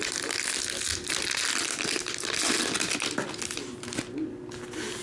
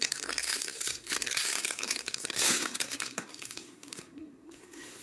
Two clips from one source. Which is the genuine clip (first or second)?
first